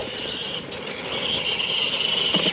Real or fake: real